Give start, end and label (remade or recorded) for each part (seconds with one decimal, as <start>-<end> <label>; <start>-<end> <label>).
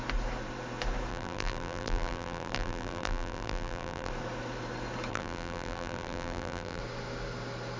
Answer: 0.0-1.1 recorded; 1.1-4.1 remade; 4.1-5.1 recorded; 5.1-6.8 remade; 6.8-7.8 recorded